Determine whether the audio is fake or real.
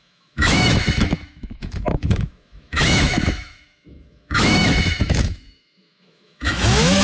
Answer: fake